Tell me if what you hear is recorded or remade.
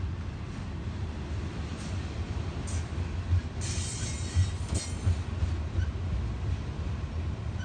recorded